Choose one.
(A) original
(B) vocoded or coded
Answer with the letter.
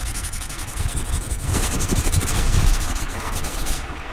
B